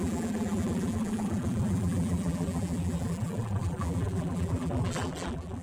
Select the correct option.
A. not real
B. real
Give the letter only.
A